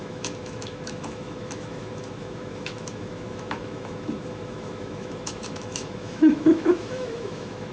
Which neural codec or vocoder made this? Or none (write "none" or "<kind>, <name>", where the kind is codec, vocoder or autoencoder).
autoencoder, DAC-VAE